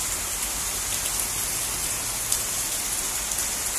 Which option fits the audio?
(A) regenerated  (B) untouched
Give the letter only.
B